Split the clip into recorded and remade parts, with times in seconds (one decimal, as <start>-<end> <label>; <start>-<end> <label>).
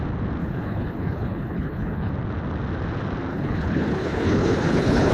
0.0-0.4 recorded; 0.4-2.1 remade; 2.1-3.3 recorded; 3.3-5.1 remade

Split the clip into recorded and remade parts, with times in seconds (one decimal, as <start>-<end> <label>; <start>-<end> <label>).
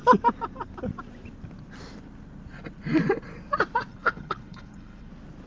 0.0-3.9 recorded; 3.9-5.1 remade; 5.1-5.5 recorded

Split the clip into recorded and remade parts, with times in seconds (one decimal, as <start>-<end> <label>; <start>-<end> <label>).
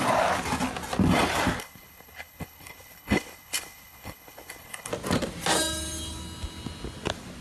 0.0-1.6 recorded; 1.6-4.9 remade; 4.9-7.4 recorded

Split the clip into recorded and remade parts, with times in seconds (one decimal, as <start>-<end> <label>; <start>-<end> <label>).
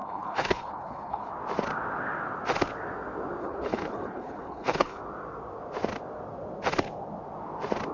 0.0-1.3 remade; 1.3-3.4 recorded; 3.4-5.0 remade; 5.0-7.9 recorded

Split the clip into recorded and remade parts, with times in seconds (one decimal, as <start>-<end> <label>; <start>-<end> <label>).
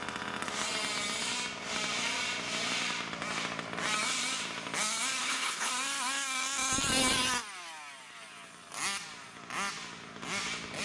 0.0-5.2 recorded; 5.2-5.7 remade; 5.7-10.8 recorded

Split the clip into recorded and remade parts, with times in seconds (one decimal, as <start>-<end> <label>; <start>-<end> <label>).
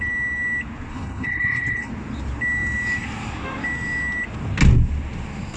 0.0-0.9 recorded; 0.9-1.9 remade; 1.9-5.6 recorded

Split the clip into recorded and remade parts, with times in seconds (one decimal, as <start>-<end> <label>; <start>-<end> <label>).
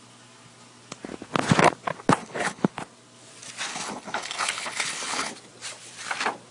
0.0-2.2 recorded; 2.2-2.7 remade; 2.7-3.7 recorded; 3.7-5.3 remade; 5.3-6.5 recorded